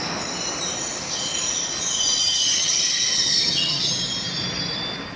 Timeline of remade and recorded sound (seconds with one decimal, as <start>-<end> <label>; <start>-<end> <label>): 0.0-2.2 recorded; 2.2-3.9 remade; 3.9-5.2 recorded